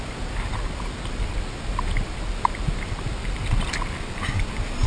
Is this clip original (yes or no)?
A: yes